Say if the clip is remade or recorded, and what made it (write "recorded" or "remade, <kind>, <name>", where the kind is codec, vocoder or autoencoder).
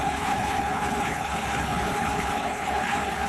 remade, codec, HILCodec